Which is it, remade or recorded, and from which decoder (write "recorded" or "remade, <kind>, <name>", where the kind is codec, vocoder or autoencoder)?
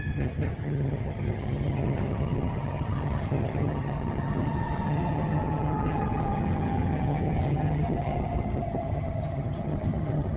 remade, vocoder, HiFi-GAN